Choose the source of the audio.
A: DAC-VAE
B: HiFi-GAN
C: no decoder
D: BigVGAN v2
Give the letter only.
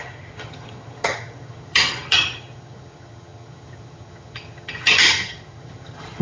B